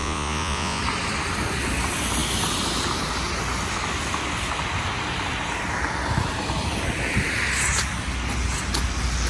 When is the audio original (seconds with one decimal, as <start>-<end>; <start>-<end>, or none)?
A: 0.8-9.3